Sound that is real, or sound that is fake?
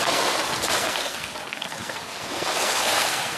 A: fake